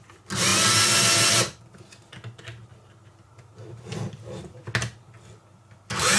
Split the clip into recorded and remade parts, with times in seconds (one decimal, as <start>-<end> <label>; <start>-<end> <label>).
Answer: 0.0-6.2 recorded